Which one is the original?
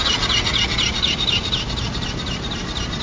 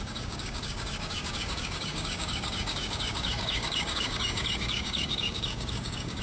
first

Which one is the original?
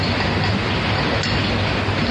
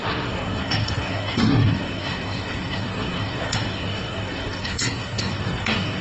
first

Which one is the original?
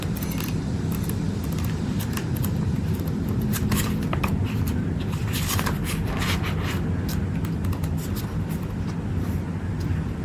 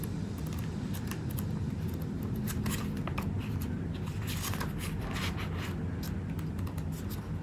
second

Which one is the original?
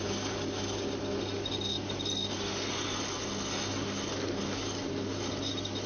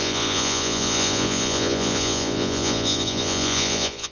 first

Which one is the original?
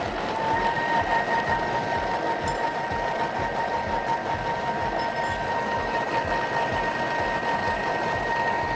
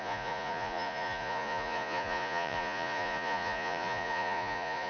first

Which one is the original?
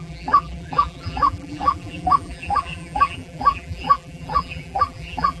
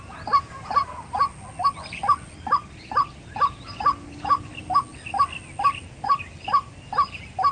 second